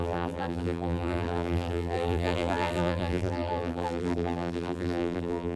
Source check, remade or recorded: remade